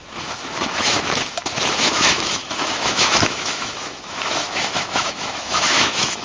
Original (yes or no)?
no